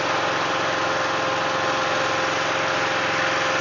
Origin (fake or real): real